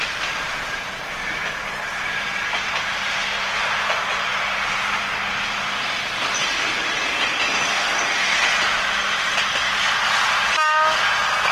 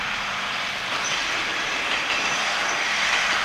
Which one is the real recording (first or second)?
first